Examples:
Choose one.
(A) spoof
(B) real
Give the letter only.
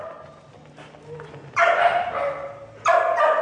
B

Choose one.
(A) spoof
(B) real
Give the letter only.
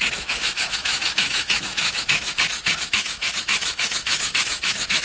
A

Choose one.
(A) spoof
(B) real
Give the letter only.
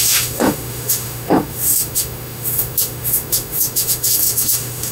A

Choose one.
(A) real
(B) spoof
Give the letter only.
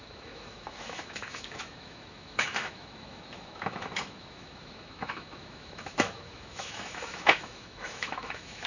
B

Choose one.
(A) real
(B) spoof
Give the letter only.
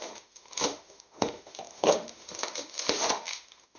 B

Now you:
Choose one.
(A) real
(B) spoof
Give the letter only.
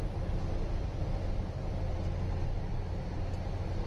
A